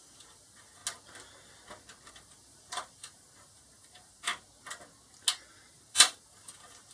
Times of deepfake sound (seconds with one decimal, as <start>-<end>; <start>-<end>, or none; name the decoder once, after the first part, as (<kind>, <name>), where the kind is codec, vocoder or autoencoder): 0.0-0.8 (vocoder, BigVGAN v2); 2.1-4.3; 5.7-6.9